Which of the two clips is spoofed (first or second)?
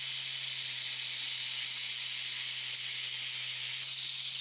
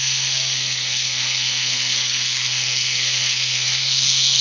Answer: second